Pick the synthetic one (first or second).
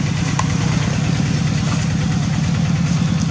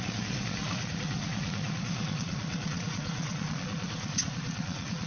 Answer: second